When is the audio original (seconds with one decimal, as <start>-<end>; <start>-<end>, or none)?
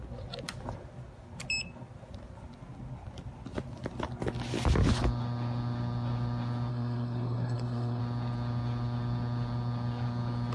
0.0-6.7; 8.0-10.5